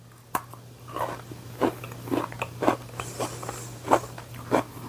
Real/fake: real